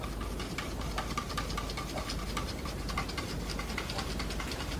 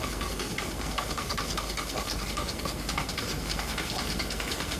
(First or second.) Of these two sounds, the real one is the first